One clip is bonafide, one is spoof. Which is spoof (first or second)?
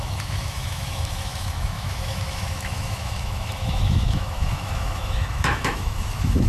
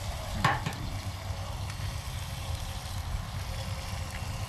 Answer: first